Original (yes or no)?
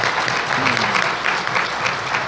yes